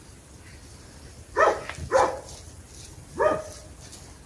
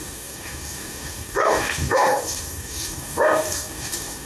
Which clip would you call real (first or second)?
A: first